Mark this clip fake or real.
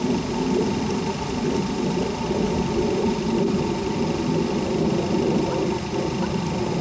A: real